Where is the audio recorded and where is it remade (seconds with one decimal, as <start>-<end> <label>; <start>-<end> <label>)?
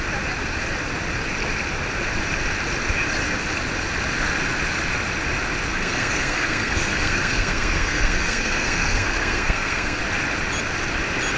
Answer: 0.0-5.7 recorded; 5.7-10.0 remade; 10.0-11.4 recorded